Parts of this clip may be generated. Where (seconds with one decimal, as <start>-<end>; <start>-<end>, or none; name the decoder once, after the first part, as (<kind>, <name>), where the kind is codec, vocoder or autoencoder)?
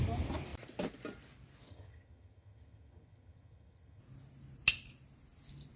1.7-4.0 (vocoder, HiFi-GAN)